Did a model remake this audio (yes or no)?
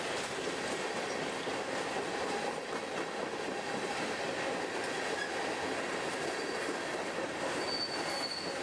no